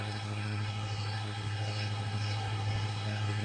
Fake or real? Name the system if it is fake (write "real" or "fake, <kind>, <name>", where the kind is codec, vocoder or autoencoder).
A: fake, codec, SNAC